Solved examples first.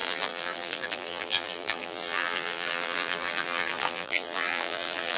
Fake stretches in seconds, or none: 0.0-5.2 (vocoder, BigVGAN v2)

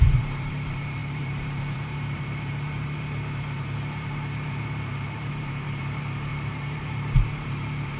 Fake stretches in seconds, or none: 0.0-8.0 (vocoder, BigVGAN v2)

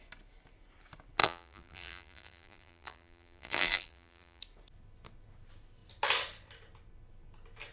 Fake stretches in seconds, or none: 1.2-4.4 (vocoder, BigVGAN v2)